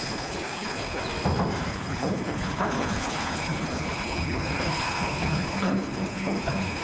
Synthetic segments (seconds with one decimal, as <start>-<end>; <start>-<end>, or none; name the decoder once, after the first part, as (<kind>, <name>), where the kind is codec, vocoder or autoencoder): 0.0-1.0 (codec, HILCodec); 1.7-6.8